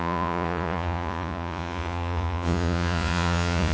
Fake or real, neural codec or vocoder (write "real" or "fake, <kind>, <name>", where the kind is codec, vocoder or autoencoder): fake, vocoder, Vocos